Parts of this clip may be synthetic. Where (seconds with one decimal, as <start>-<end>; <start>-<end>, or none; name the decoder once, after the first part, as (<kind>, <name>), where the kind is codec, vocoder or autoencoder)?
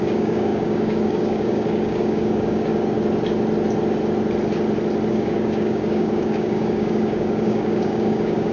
0.0-2.7 (codec, DAC); 5.1-8.5